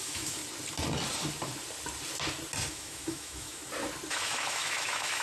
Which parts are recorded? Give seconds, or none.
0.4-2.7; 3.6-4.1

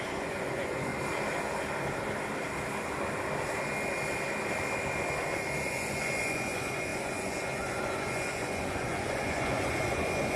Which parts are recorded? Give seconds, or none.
0.9-5.7

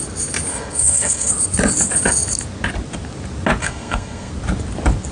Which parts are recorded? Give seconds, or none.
0.0-0.5; 1.3-3.6; 4.3-5.1